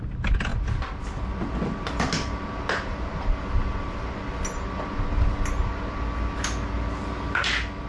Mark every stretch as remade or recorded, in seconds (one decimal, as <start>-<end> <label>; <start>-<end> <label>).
0.0-7.9 recorded